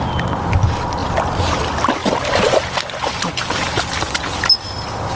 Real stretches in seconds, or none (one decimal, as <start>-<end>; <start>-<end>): 0.0-1.0; 1.6-5.2